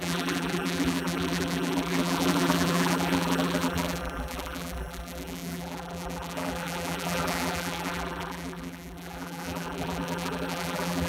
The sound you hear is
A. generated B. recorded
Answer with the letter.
A